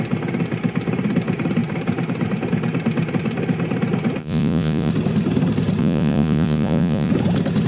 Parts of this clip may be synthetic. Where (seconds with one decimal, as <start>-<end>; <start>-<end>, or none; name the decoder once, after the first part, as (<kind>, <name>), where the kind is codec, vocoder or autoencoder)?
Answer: 4.2-4.9 (vocoder, Vocos); 5.8-7.1